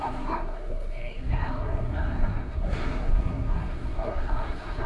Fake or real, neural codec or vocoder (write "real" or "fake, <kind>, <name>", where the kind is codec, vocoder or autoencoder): fake, codec, SNAC